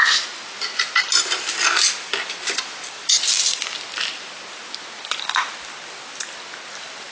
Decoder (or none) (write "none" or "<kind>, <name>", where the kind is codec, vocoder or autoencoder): none